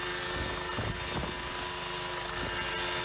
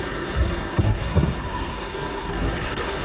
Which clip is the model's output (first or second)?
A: second